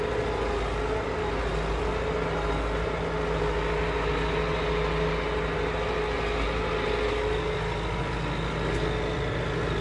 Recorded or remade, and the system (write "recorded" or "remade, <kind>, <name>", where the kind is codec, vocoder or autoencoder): recorded